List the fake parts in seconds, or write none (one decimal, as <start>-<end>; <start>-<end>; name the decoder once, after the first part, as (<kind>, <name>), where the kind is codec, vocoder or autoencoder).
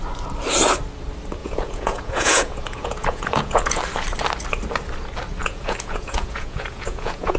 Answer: 1.4-3.8 (vocoder, Vocos); 5.4-7.4